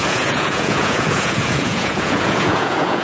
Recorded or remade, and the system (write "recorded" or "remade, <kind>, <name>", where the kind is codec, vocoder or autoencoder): remade, vocoder, Vocos